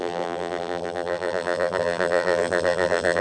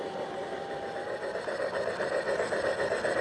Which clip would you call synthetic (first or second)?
first